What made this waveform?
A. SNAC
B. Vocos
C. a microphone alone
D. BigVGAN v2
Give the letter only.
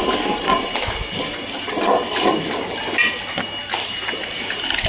C